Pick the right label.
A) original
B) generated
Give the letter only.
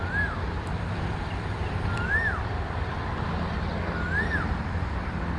A